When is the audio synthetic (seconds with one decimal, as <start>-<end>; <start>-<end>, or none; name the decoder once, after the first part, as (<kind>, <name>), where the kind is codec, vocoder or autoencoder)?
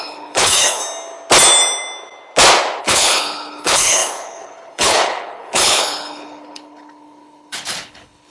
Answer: 0.0-0.8 (codec, HILCodec); 2.8-8.3